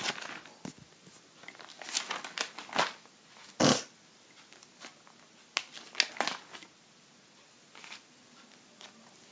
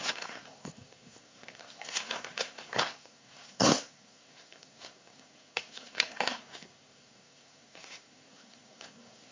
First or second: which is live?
first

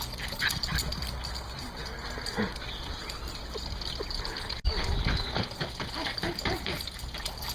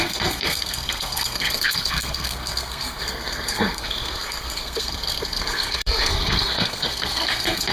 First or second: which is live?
first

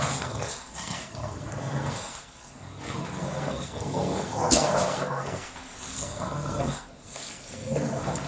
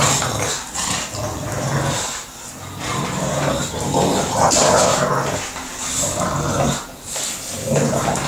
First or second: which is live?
second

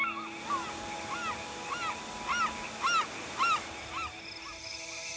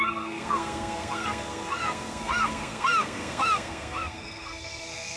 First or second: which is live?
first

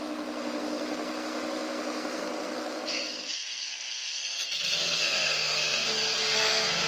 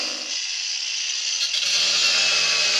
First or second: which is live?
second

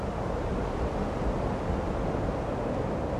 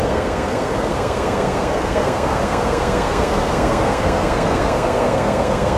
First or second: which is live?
first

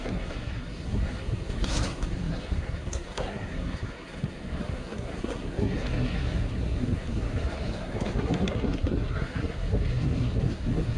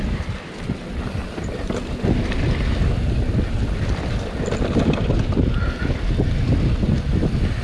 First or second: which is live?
second